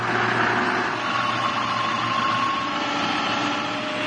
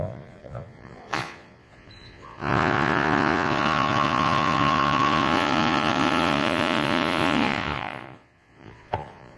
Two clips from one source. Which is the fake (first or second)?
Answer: second